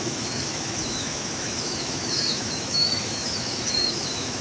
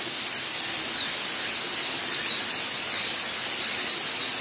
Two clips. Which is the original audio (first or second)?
second